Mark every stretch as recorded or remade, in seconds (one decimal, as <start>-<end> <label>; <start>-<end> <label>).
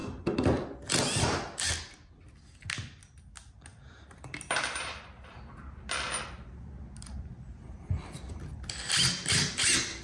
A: 0.0-3.7 recorded; 3.7-5.4 remade; 5.4-10.0 recorded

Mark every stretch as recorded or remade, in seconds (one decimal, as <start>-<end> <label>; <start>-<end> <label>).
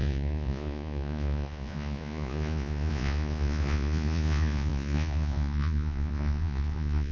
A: 0.0-7.1 remade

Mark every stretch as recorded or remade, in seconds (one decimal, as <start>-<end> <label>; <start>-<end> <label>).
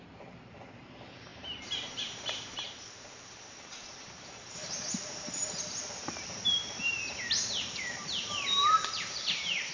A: 0.0-9.7 remade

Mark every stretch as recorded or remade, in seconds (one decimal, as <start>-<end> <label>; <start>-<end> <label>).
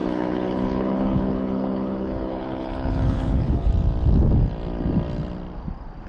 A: 0.0-3.7 remade; 3.7-6.1 recorded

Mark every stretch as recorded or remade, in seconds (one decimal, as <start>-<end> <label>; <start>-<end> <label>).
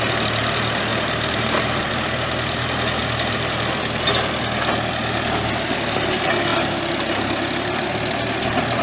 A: 0.0-0.9 recorded; 0.9-1.9 remade; 1.9-3.0 recorded; 3.0-3.7 remade; 3.7-8.8 recorded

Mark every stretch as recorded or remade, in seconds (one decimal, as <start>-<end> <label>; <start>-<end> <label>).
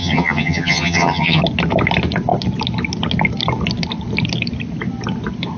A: 0.0-1.4 remade; 1.4-5.6 recorded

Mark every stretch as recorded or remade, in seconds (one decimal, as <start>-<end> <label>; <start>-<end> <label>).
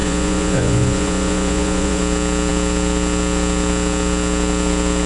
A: 0.0-2.0 remade; 2.0-5.1 recorded